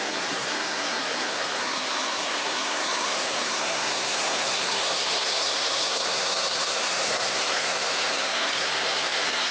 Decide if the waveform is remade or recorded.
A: remade